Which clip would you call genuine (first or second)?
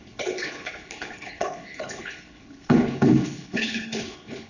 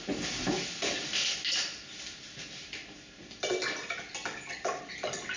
second